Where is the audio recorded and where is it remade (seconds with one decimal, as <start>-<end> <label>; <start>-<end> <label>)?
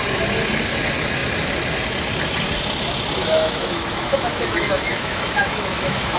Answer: 0.0-3.2 recorded; 3.2-6.2 remade